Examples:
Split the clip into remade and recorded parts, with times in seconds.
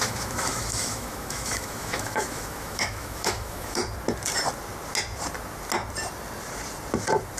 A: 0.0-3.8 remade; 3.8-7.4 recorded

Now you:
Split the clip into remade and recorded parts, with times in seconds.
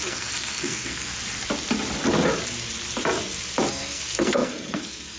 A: 0.0-1.1 remade; 1.1-3.7 recorded; 3.7-5.2 remade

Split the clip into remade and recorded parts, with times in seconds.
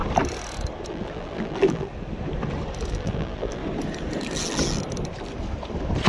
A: 0.0-0.9 recorded; 0.9-1.9 remade; 1.9-2.9 recorded; 2.9-3.6 remade; 3.6-6.1 recorded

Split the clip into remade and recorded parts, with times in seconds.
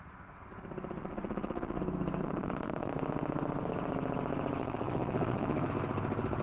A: 0.0-1.0 recorded; 1.0-1.8 remade; 1.8-2.2 recorded; 2.2-2.9 remade; 2.9-4.6 recorded; 4.6-5.7 remade; 5.7-6.4 recorded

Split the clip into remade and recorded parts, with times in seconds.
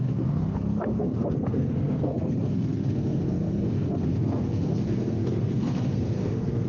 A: 0.0-6.7 remade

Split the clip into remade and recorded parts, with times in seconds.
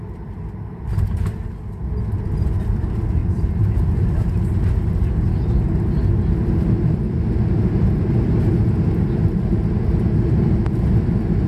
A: 0.0-11.5 recorded